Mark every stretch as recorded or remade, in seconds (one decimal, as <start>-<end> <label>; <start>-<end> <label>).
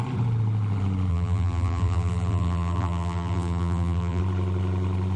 0.0-1.1 recorded; 1.1-4.2 remade; 4.2-5.2 recorded